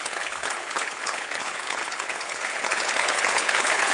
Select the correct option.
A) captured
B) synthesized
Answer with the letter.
B